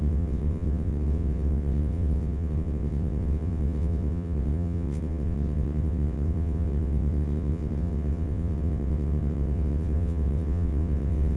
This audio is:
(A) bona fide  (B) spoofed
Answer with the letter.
B